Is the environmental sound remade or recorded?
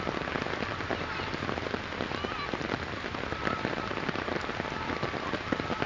recorded